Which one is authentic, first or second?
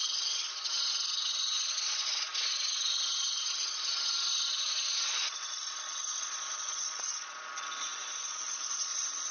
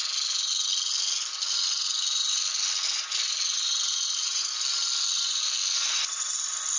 second